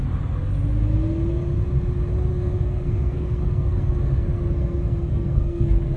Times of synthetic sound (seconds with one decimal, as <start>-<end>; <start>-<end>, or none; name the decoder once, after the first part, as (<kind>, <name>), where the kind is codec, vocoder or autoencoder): 2.3-6.0 (codec, SNAC)